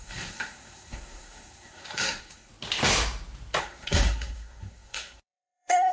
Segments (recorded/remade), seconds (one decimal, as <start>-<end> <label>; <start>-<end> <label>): 0.0-2.5 remade; 2.5-3.6 recorded; 3.6-5.9 remade